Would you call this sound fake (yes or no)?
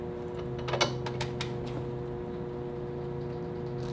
no